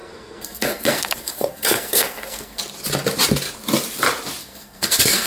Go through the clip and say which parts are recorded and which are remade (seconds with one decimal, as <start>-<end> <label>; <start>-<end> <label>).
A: 0.0-2.6 remade; 2.6-4.4 recorded; 4.4-5.3 remade

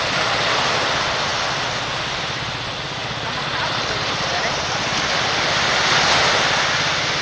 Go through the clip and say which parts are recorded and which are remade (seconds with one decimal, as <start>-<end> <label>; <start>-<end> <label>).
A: 0.0-7.2 recorded